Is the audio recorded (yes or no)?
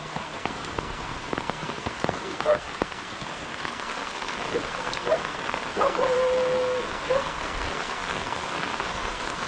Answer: no